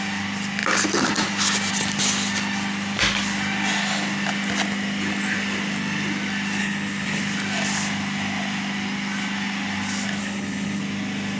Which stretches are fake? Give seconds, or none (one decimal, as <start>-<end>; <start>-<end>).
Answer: 6.6-7.2; 10.2-10.8